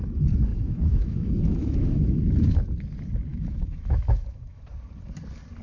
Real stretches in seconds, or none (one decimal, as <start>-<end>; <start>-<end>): 0.0-0.5; 2.2-3.3; 4.6-5.6